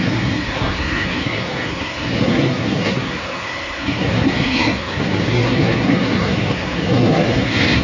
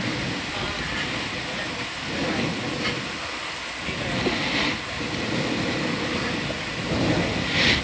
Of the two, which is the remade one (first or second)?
first